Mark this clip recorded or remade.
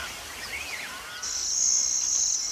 recorded